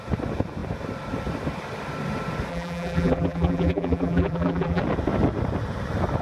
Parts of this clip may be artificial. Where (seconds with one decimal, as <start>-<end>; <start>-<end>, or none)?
2.5-4.8